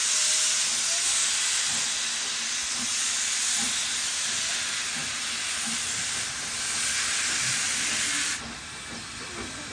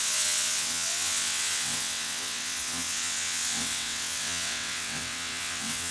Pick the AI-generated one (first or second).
second